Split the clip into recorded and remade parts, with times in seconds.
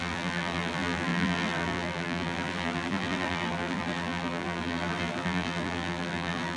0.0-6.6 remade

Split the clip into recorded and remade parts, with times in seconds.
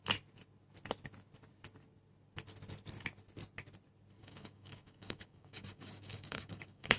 0.0-4.2 recorded; 4.2-7.0 remade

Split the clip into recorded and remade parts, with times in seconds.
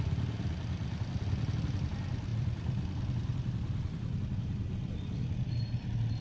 0.0-2.3 recorded; 2.3-6.2 remade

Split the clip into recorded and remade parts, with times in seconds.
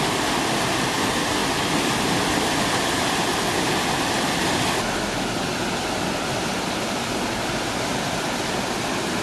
0.0-9.2 recorded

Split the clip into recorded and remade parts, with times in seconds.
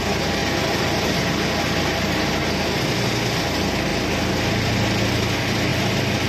0.0-0.4 recorded; 0.4-1.1 remade; 1.1-5.7 recorded; 5.7-6.3 remade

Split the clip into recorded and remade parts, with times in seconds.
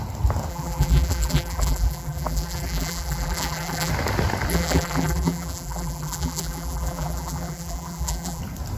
0.0-0.5 recorded; 0.5-3.9 remade; 3.9-4.5 recorded; 4.5-8.4 remade; 8.4-8.8 recorded